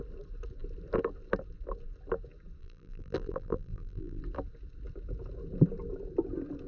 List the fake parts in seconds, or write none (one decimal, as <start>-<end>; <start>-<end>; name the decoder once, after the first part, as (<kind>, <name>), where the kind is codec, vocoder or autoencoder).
2.6-4.2 (vocoder, BigVGAN v2)